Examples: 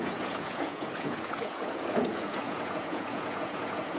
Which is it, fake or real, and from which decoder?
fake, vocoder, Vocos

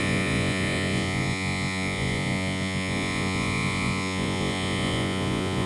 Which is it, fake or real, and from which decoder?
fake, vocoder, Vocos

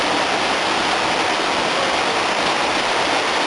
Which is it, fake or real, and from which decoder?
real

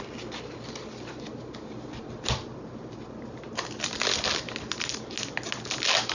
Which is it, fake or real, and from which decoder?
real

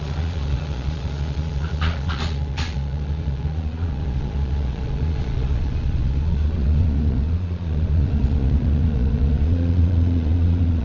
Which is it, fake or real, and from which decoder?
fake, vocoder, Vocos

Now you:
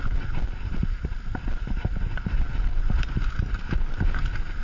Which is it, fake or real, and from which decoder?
real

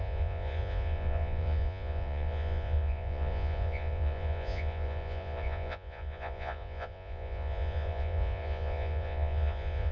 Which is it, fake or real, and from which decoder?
fake, vocoder, Vocos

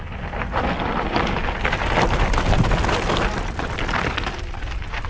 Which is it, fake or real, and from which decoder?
real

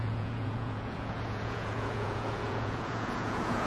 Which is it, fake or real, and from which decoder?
fake, vocoder, Vocos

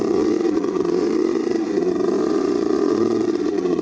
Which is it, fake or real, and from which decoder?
fake, vocoder, Vocos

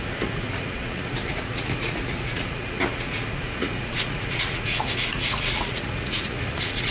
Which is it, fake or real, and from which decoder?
fake, vocoder, Vocos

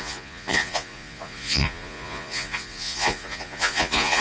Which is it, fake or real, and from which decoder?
fake, vocoder, Vocos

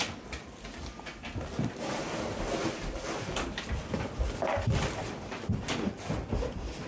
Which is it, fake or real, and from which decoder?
real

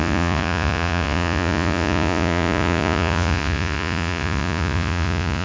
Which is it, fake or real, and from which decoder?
fake, vocoder, Vocos